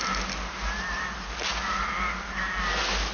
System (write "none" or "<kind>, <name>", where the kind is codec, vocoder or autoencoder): none